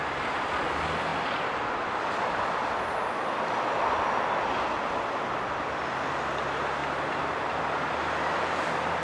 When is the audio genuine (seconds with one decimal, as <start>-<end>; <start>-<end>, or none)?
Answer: 0.0-6.8; 7.5-9.0